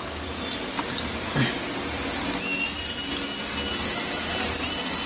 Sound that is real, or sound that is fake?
real